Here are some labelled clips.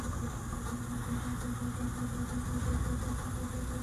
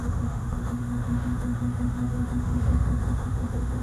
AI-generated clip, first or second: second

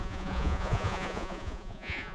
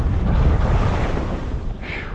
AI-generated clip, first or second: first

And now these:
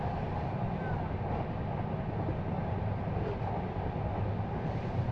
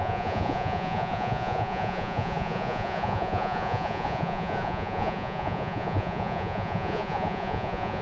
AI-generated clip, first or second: second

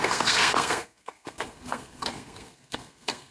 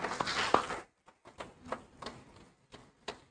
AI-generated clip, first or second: first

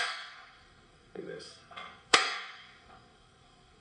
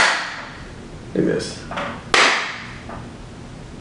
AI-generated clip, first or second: first